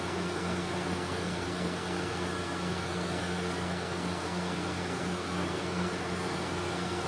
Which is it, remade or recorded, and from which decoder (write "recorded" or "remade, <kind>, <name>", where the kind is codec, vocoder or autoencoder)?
remade, codec, SNAC